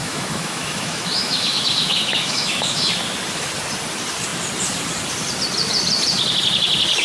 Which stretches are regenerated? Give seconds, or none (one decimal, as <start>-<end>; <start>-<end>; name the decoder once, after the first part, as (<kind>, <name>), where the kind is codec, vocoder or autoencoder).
0.0-2.9 (autoencoder, DAC-VAE)